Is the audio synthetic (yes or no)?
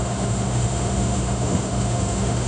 yes